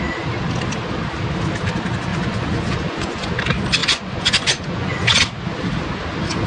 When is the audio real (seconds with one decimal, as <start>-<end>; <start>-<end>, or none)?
0.0-2.1; 3.3-3.8; 5.2-6.5